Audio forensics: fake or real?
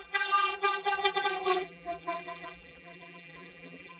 fake